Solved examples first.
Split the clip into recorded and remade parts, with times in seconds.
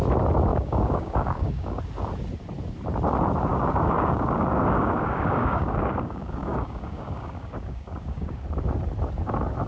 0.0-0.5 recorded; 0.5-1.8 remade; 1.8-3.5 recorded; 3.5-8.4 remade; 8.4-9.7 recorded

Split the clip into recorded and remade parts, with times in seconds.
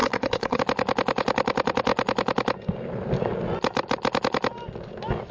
0.0-0.6 remade; 0.6-5.3 recorded